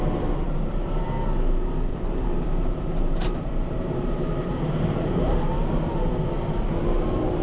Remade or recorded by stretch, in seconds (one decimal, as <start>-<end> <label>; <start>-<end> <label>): 0.0-1.9 recorded; 1.9-5.5 remade; 5.5-7.4 recorded